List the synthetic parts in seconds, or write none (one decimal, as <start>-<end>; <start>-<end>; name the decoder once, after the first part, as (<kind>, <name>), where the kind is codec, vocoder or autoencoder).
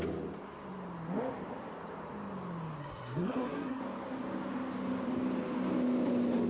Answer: 2.8-3.8 (codec, SNAC)